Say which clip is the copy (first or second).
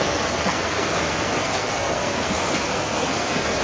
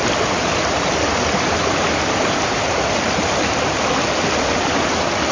first